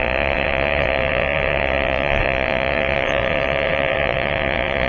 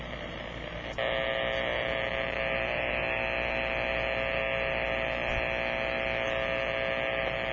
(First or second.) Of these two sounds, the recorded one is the second